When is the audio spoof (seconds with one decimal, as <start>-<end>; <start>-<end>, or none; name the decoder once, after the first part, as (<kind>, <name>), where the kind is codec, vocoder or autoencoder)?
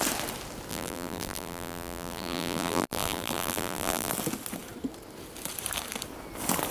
0.7-4.1 (vocoder, BigVGAN v2)